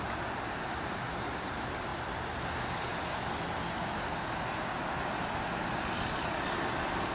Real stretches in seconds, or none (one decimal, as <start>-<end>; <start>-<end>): 0.0-7.1